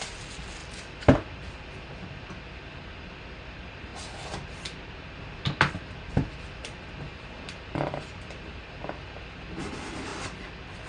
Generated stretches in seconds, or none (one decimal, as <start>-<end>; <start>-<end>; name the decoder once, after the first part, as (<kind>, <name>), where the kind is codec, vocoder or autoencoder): 7.1-7.6 (vocoder, BigVGAN v2)